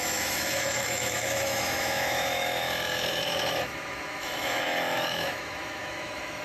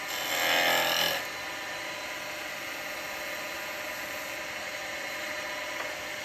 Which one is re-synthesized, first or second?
first